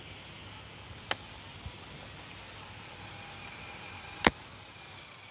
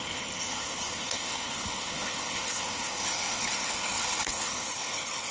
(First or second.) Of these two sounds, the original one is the first